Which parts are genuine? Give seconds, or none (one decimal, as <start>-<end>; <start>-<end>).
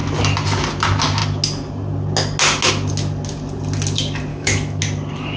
0.0-4.3; 4.8-5.4